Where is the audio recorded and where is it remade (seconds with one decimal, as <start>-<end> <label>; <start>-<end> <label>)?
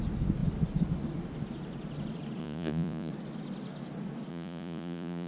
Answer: 0.0-2.4 recorded; 2.4-3.1 remade; 3.1-4.3 recorded; 4.3-5.3 remade